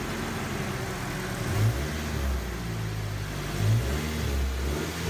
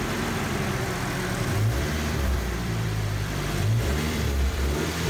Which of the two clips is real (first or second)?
first